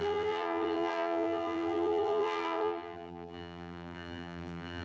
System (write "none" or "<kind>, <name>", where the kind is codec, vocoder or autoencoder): vocoder, BigVGAN v2